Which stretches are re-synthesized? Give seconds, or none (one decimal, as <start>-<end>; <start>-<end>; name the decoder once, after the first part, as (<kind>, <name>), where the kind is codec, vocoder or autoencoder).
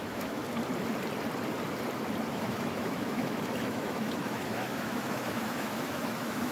0.0-0.4 (autoencoder, DAC-VAE); 2.3-6.5